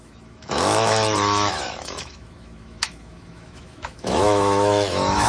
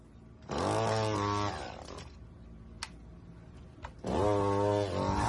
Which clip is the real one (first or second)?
second